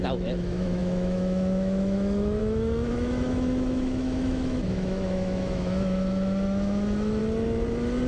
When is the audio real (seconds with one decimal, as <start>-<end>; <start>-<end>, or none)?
7.2-8.1